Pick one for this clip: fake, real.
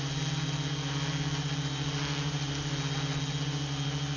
real